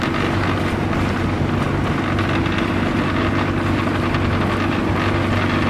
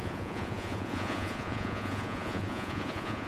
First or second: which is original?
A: first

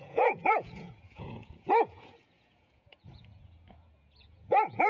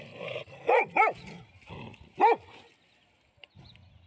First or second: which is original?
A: second